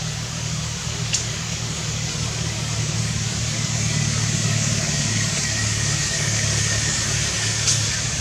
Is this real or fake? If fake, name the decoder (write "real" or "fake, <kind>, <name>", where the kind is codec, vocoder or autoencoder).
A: fake, codec, DAC